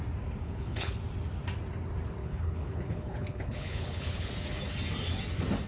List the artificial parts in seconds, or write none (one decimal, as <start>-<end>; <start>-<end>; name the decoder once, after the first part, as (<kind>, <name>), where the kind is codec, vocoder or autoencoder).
0.4-1.0 (codec, HILCodec); 2.2-4.3